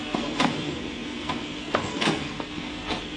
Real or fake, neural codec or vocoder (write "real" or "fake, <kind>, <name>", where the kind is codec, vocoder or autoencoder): fake, codec, SNAC